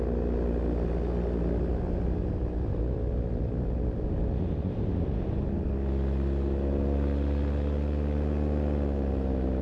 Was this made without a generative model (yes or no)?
yes